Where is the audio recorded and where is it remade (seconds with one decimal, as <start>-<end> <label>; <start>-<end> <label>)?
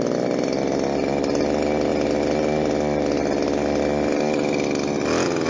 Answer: 0.0-5.5 recorded